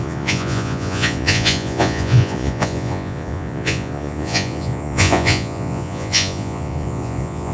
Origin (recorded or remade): remade